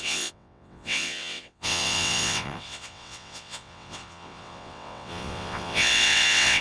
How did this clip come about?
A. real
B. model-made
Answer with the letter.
B